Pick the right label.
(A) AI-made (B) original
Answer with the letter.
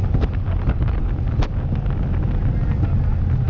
B